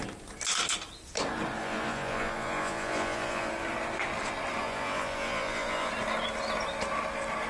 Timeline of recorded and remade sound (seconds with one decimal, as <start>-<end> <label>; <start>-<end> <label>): 0.0-1.6 recorded; 1.6-3.5 remade; 3.5-4.6 recorded; 4.6-5.9 remade; 5.9-7.5 recorded